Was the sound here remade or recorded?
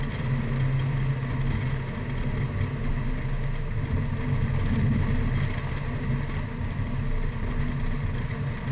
recorded